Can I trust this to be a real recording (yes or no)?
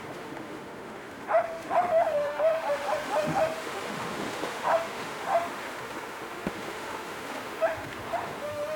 no